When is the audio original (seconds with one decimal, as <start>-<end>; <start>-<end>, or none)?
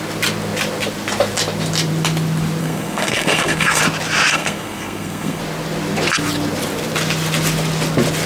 0.0-2.6; 3.8-4.3; 5.4-8.3